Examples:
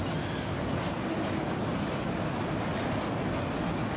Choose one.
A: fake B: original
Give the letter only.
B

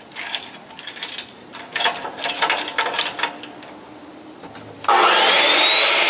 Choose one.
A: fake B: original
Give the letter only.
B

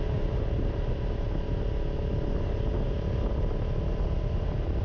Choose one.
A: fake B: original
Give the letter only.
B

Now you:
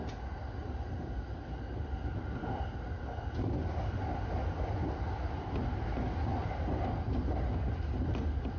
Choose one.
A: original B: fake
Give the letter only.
A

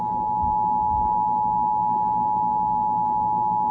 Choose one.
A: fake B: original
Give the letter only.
B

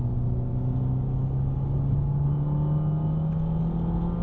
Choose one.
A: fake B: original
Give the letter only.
B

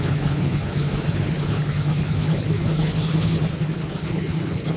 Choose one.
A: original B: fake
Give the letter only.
B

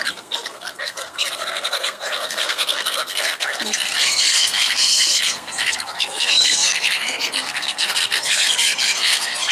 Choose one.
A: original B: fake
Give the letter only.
B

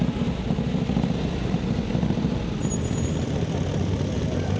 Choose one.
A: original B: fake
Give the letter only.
A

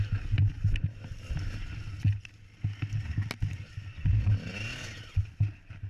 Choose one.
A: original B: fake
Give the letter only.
A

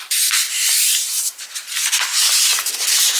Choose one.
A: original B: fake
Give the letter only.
B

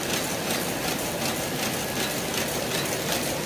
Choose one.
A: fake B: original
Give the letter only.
B